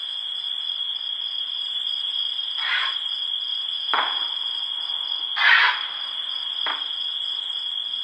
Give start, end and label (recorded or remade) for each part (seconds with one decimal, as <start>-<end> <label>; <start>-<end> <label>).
0.0-3.0 remade; 3.0-3.5 recorded; 3.5-4.9 remade; 4.9-8.0 recorded